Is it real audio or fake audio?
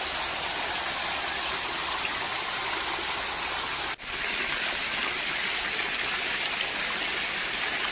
real